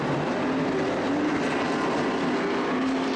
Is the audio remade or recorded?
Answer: recorded